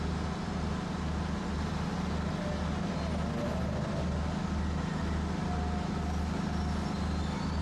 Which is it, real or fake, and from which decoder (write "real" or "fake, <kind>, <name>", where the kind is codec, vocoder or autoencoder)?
real